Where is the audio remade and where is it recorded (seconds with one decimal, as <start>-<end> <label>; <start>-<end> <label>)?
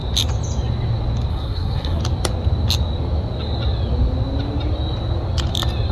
0.0-1.3 recorded; 1.3-2.0 remade; 2.0-5.9 recorded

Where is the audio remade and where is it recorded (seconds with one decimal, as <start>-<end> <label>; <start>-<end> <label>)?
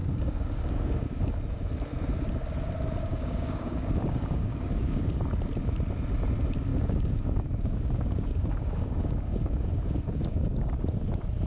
0.0-1.3 remade; 1.3-3.1 recorded; 3.1-5.2 remade; 5.2-6.7 recorded; 6.7-10.7 remade; 10.7-11.5 recorded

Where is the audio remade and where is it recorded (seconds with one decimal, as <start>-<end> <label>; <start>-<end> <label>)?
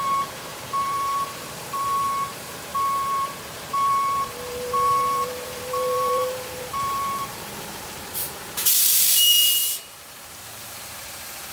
0.0-11.5 remade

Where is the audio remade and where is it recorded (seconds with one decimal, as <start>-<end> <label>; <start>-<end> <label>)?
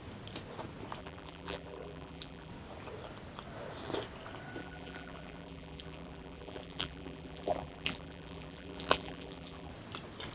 0.0-1.0 recorded; 1.0-2.5 remade; 2.5-4.6 recorded; 4.6-9.7 remade; 9.7-10.3 recorded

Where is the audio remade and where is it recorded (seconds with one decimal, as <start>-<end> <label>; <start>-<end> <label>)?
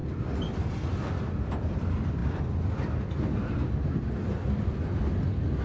0.0-5.6 recorded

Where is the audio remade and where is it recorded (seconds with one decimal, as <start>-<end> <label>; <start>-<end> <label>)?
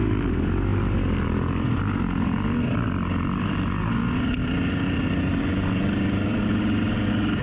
0.0-7.4 recorded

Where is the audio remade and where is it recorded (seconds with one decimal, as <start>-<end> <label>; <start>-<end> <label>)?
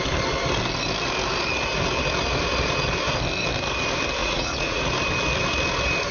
0.0-4.2 recorded; 4.2-4.9 remade; 4.9-6.1 recorded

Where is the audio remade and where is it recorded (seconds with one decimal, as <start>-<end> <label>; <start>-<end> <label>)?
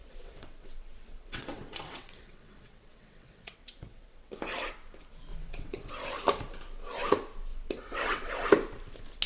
0.0-4.3 remade; 4.3-5.3 recorded; 5.3-5.9 remade; 5.9-7.5 recorded; 7.5-8.3 remade; 8.3-9.3 recorded